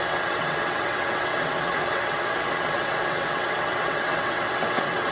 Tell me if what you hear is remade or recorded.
remade